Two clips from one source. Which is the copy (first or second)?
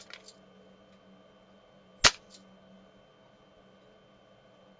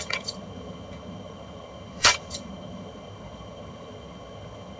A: second